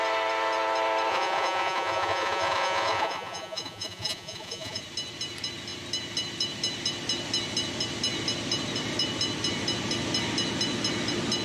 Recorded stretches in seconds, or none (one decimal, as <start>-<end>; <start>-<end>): 0.0-1.1; 4.8-11.4